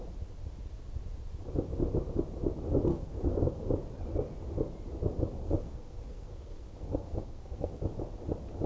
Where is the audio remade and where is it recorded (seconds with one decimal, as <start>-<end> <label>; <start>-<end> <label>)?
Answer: 0.0-2.9 recorded; 2.9-3.7 remade; 3.7-5.4 recorded; 5.4-7.7 remade; 7.7-8.7 recorded